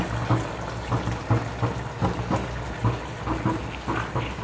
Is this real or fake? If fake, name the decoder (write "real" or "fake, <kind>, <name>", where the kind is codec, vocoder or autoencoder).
real